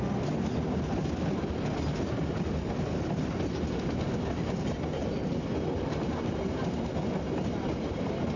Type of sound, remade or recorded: recorded